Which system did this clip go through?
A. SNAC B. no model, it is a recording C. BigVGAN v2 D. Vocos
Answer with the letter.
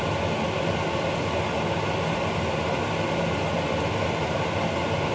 B